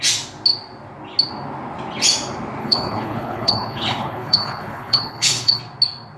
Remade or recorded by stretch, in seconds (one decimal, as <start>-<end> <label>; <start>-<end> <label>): 0.0-2.6 recorded; 2.6-5.6 remade; 5.6-6.2 recorded